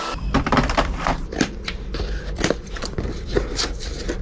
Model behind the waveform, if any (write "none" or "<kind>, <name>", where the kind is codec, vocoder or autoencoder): vocoder, BigVGAN v2